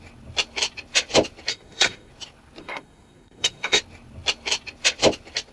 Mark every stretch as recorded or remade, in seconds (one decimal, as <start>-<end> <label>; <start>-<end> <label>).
0.0-1.5 recorded; 1.5-2.1 remade; 2.1-2.6 recorded; 2.6-3.8 remade; 3.8-5.5 recorded